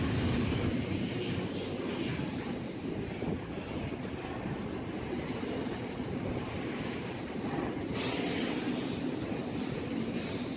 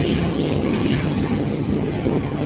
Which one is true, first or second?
first